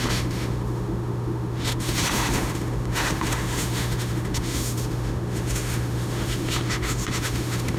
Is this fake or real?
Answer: fake